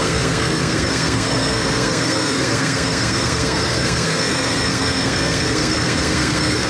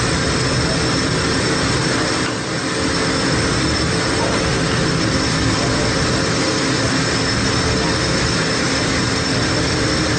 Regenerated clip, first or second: first